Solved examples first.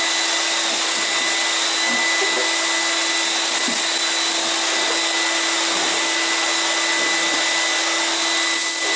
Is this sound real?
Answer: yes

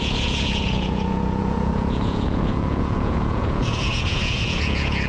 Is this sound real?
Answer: no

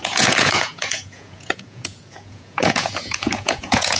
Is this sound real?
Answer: no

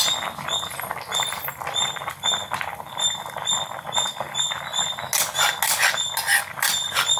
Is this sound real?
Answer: yes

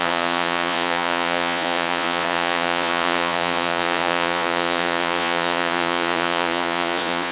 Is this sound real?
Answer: no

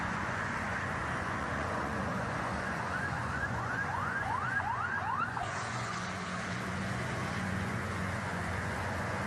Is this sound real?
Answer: no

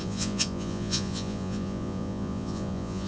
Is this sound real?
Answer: no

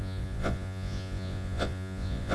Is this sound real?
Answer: no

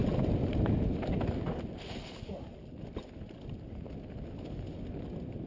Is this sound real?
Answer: yes